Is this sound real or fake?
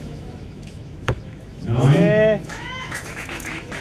fake